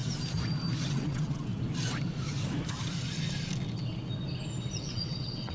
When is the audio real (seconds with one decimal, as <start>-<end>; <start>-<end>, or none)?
0.0-0.9; 1.5-4.8